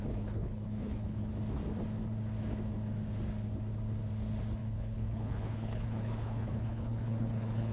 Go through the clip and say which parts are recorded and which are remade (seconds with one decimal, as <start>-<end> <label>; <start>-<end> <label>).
0.0-1.3 remade; 1.3-4.6 recorded; 4.6-7.7 remade